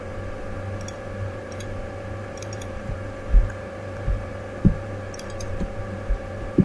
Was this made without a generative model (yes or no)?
no